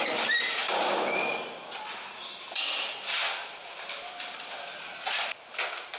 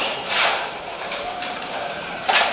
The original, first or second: first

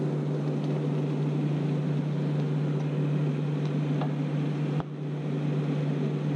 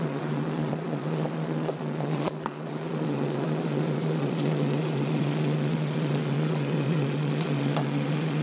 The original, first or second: first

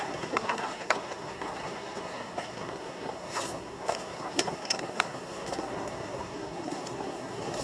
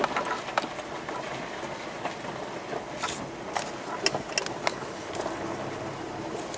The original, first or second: second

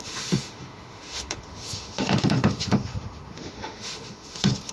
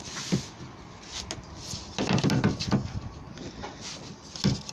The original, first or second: second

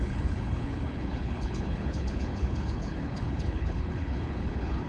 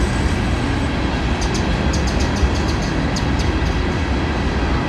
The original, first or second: second